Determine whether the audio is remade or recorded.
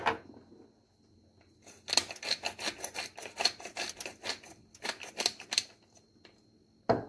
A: recorded